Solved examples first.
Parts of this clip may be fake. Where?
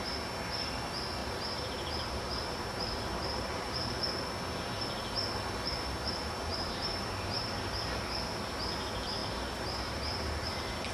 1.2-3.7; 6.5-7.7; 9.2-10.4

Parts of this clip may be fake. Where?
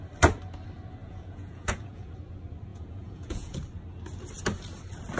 1.0-2.1; 2.7-3.6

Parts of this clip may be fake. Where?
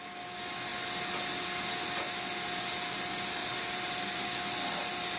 3.4-4.0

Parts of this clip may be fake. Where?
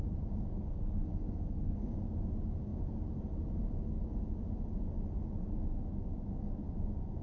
0.5-2.0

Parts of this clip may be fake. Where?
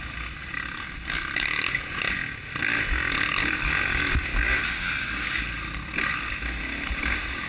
4.3-5.4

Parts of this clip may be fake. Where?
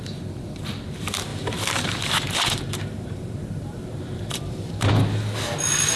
1.3-4.9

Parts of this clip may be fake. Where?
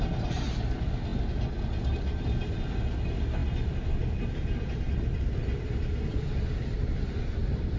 none